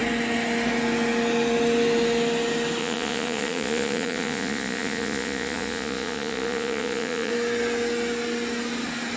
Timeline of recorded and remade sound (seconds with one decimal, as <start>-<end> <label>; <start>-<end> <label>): 0.0-2.8 recorded; 2.8-7.3 remade; 7.3-9.2 recorded